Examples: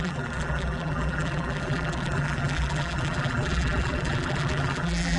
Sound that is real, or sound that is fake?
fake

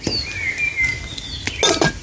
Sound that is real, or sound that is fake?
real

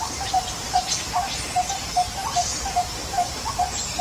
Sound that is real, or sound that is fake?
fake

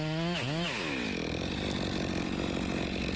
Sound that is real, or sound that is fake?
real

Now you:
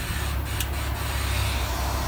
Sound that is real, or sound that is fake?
real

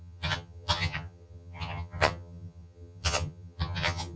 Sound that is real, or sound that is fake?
fake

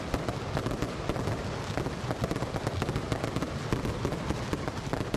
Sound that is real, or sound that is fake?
real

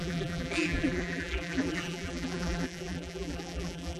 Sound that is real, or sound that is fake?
fake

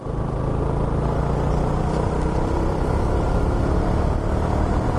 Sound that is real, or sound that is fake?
real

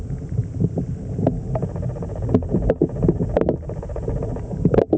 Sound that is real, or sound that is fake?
real